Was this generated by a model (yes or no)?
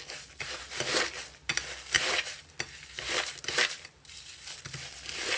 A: no